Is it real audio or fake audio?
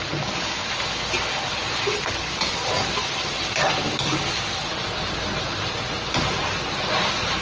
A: real